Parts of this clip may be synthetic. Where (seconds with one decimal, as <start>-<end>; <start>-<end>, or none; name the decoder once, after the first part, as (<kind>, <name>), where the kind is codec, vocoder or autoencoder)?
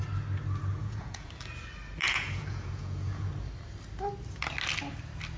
0.7-1.3 (vocoder, Vocos); 2.0-3.3